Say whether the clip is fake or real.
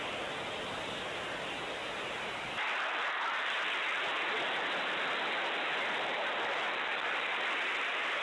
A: fake